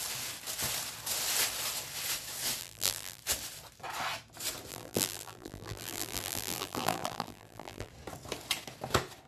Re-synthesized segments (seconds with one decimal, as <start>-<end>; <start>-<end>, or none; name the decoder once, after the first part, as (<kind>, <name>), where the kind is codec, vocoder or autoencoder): 2.6-3.2 (vocoder, BigVGAN v2); 4.7-7.9